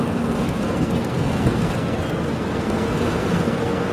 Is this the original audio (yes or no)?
no